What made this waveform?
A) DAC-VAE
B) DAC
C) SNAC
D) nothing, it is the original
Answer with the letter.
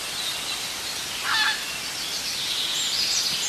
D